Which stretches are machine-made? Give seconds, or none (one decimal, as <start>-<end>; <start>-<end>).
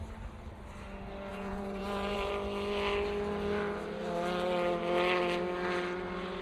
1.3-2.3